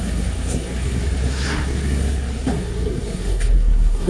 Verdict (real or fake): fake